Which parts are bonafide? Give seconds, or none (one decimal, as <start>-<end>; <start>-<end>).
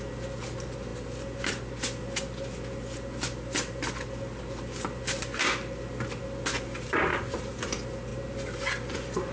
0.0-9.3